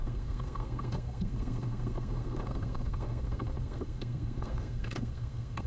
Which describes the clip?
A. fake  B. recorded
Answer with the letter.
A